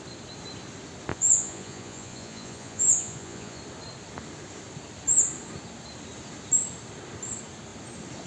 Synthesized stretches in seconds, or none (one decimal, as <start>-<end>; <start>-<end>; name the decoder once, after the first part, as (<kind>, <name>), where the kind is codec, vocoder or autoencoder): 1.1-3.6 (vocoder, Vocos)